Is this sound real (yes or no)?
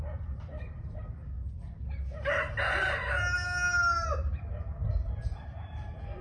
yes